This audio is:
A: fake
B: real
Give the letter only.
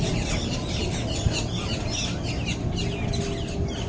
B